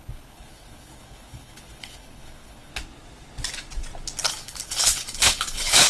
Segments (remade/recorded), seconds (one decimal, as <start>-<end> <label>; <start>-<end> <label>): 0.0-2.7 remade; 2.7-4.3 recorded; 4.3-5.9 remade